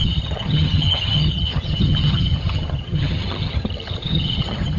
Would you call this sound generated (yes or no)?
yes